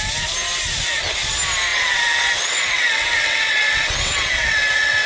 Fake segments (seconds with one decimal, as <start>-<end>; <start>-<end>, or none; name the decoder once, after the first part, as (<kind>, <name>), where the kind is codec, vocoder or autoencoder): 1.7-5.1 (vocoder, WaveNeXt)